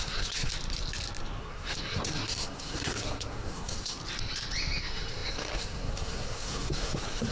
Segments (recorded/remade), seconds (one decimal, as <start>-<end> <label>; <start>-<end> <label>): 0.0-0.5 remade; 0.5-1.4 recorded; 1.4-4.0 remade; 4.0-4.8 recorded; 4.8-7.3 remade